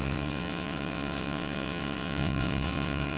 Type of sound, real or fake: fake